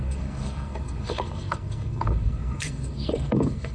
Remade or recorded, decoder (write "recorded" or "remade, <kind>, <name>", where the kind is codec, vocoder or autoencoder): remade, codec, SNAC